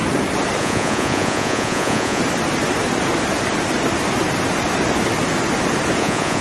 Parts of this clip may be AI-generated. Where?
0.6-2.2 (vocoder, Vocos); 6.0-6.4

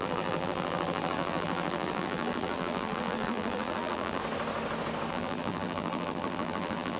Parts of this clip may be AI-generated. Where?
0.0-4.2 (vocoder, BigVGAN v2); 5.1-7.0

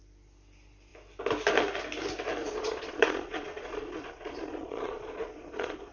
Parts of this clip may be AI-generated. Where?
2.4-5.9 (vocoder, Vocos)

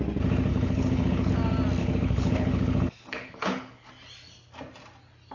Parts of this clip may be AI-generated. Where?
0.5-1.3 (codec, HILCodec); 1.8-3.9

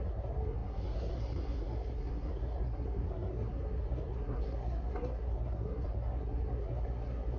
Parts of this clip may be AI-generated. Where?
0.0-7.4 (codec, SNAC)

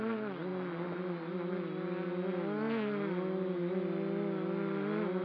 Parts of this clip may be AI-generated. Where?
none

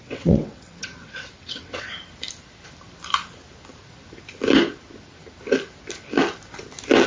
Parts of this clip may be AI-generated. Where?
0.0-1.9 (vocoder, WaveNeXt)